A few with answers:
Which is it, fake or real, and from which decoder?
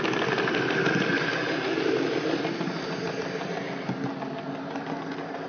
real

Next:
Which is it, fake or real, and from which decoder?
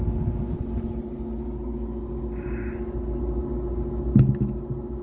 real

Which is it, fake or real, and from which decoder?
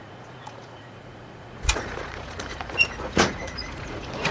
fake, vocoder, Vocos